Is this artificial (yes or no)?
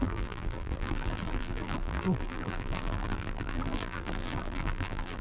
yes